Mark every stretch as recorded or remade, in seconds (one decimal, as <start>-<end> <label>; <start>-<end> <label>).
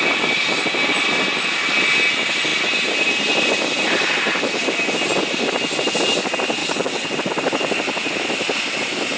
0.0-6.6 recorded; 6.6-7.3 remade; 7.3-9.2 recorded